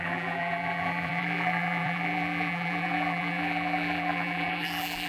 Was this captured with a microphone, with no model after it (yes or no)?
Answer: no